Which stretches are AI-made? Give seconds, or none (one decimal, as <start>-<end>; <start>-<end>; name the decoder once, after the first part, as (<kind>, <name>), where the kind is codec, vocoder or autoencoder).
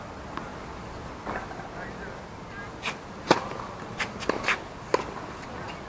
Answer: none